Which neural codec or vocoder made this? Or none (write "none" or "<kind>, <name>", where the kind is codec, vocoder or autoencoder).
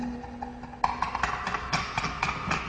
none